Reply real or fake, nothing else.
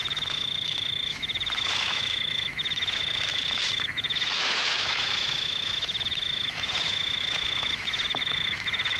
fake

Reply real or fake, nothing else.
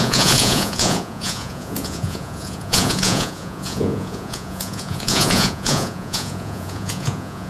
fake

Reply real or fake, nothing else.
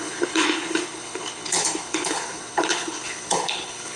fake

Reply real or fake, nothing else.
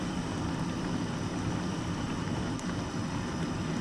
real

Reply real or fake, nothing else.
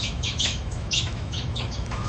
fake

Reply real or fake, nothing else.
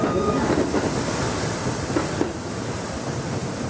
real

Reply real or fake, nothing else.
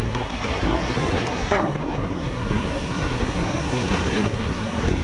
fake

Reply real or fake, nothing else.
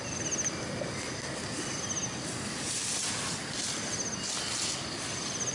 real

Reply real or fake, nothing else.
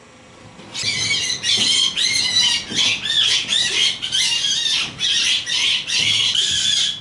real